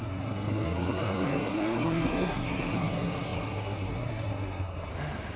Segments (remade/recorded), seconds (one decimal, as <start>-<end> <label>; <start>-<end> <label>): 0.0-4.9 remade; 4.9-5.4 recorded